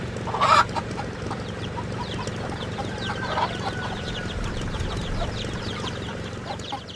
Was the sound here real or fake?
fake